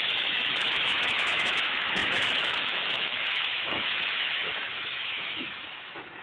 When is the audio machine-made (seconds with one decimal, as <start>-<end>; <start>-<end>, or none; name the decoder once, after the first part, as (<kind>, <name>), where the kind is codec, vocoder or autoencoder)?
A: 0.0-6.2 (autoencoder, DAC-VAE)